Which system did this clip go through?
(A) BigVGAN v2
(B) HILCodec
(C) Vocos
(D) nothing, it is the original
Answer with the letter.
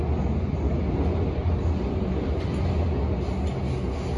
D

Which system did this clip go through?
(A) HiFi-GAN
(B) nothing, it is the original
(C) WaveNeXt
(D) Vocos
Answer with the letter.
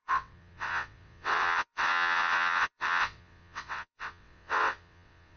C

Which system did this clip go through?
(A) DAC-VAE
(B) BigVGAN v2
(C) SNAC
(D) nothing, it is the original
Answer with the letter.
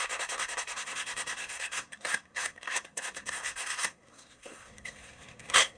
C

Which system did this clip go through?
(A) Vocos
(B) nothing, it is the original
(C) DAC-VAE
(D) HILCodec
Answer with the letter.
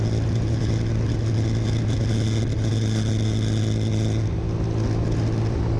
B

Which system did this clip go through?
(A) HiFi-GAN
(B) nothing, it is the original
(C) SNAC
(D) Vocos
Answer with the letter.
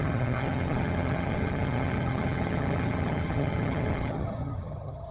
A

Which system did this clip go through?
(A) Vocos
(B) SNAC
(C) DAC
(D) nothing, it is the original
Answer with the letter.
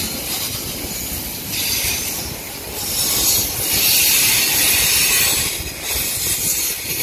D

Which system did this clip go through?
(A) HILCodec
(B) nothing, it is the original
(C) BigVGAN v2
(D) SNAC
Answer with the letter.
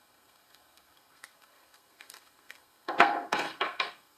D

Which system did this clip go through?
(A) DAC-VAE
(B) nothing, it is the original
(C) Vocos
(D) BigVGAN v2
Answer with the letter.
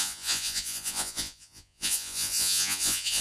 C